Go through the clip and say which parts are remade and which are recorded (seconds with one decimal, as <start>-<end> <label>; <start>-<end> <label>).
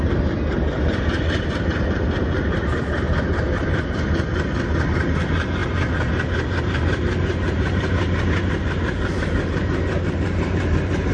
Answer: 0.0-11.1 remade